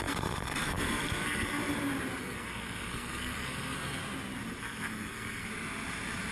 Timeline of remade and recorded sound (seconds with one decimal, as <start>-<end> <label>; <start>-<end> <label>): 0.0-1.6 remade; 1.6-2.2 recorded; 2.2-4.0 remade; 4.0-4.6 recorded; 4.6-5.5 remade; 5.5-6.3 recorded

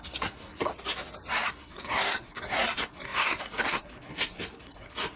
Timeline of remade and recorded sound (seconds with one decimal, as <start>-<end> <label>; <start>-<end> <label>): 0.0-0.7 remade; 0.7-1.3 recorded; 1.3-5.2 remade

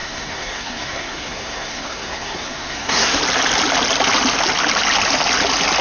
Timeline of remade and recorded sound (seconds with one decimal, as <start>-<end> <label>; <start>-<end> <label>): 0.0-3.2 remade; 3.2-5.8 recorded

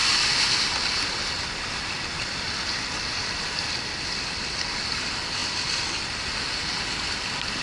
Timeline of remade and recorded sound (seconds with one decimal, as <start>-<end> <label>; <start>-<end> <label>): 0.0-7.6 recorded

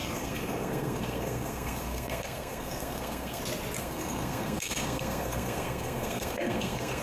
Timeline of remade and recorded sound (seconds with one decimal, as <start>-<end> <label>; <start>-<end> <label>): 0.0-3.4 remade; 3.4-3.8 recorded; 3.8-7.0 remade

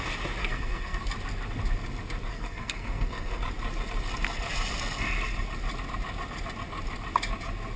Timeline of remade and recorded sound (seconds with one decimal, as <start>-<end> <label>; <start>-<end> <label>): 0.0-0.4 recorded; 0.4-1.0 remade; 1.0-2.3 recorded; 2.3-3.4 remade; 3.4-7.8 recorded

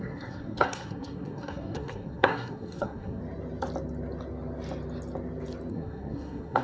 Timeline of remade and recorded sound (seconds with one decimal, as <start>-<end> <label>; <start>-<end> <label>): 0.0-3.2 remade; 3.2-5.7 recorded; 5.7-6.6 remade